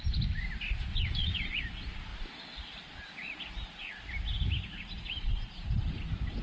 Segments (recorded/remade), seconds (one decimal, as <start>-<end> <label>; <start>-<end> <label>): 0.0-0.9 recorded; 0.9-1.5 remade; 1.5-6.4 recorded